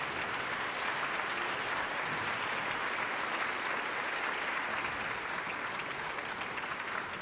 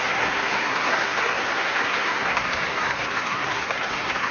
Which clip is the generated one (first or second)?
second